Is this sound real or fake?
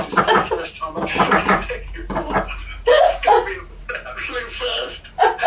real